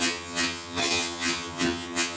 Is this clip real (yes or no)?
no